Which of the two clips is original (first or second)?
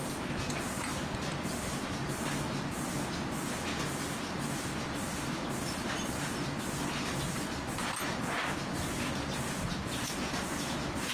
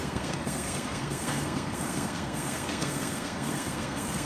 first